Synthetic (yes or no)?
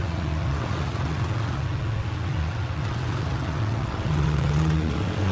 yes